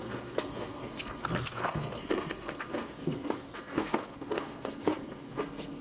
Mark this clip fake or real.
fake